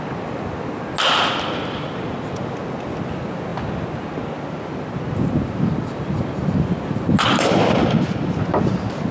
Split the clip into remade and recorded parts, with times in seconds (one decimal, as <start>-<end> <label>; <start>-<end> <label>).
0.0-9.1 recorded